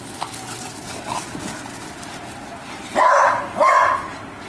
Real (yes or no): yes